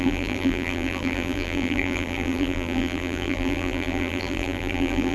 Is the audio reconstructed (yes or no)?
yes